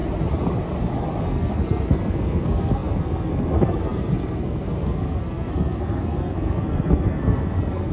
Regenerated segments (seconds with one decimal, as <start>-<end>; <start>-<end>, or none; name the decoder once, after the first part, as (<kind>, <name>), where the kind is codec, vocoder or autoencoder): 1.2-7.9 (codec, SNAC)